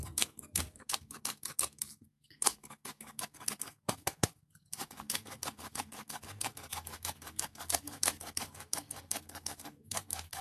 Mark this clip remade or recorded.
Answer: remade